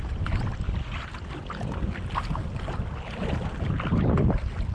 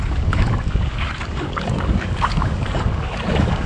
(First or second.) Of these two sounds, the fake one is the second